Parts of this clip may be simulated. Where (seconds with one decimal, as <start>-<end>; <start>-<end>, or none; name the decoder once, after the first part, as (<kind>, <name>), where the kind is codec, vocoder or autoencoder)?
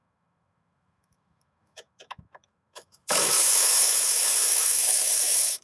0.0-5.6 (autoencoder, DAC-VAE)